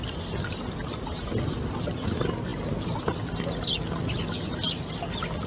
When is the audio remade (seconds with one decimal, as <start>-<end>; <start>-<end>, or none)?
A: none